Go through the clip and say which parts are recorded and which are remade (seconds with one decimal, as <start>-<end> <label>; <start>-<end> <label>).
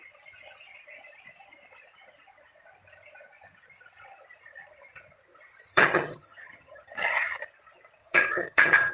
0.0-5.7 recorded; 5.7-7.4 remade; 7.4-8.0 recorded; 8.0-8.9 remade